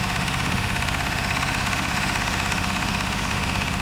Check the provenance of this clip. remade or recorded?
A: remade